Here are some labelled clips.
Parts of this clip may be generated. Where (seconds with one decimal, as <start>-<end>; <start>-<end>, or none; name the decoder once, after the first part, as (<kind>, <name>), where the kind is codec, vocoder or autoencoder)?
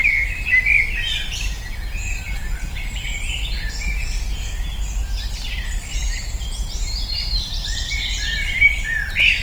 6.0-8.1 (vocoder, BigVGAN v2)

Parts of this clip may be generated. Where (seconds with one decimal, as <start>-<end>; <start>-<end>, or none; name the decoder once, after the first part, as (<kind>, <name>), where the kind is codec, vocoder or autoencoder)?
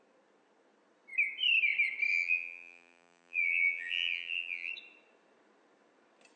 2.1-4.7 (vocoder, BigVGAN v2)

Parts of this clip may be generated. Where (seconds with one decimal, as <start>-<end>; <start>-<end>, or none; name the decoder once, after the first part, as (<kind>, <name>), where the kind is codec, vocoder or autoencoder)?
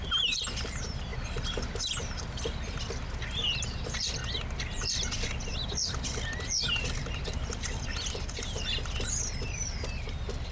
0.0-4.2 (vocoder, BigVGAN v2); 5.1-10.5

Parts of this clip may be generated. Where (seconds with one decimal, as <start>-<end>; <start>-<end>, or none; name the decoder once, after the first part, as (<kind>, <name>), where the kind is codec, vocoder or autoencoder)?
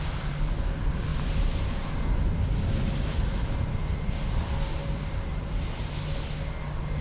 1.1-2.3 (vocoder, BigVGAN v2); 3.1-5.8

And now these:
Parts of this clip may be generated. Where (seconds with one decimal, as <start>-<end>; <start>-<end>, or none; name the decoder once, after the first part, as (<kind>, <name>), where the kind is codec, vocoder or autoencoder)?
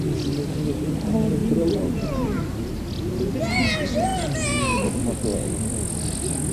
none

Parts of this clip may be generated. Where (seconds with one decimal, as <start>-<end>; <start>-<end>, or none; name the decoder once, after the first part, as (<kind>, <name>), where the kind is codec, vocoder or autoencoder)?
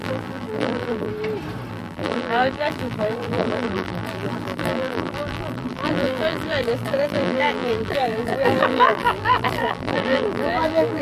0.0-1.1 (vocoder, BigVGAN v2); 1.7-11.0